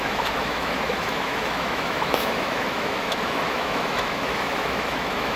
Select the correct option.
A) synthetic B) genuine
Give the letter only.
A